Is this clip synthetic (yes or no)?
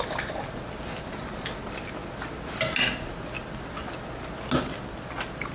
no